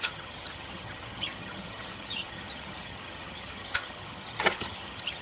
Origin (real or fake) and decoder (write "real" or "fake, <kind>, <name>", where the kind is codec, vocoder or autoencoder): fake, vocoder, HiFi-GAN